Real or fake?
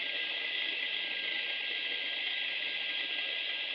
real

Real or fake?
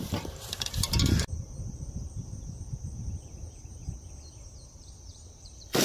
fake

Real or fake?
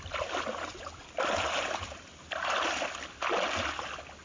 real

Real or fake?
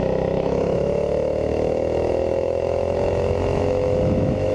fake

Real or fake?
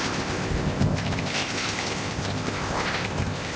fake